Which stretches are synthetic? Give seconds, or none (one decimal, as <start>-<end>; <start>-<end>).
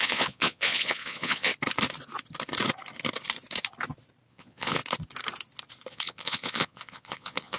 0.0-1.5; 4.3-4.8; 5.9-7.6